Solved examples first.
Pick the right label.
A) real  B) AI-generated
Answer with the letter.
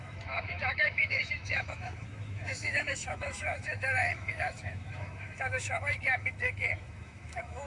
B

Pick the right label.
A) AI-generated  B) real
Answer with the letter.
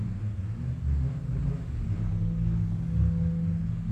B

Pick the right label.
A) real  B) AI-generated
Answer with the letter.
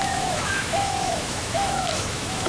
B